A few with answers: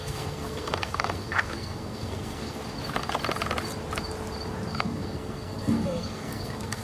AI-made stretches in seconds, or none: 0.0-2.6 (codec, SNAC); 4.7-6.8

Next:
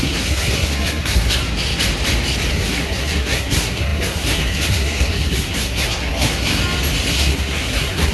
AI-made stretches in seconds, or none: 0.0-1.4 (codec, SNAC); 2.5-6.6; 7.1-8.1

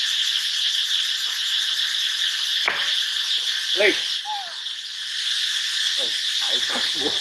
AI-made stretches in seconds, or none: none

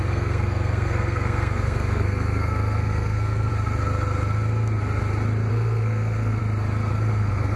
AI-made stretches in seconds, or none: 0.0-3.5 (codec, SNAC); 5.5-6.4; 6.9-7.6

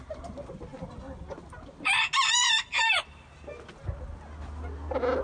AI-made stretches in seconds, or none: none

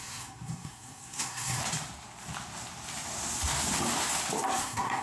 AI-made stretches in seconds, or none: 0.0-1.6 (codec, SNAC); 4.6-5.0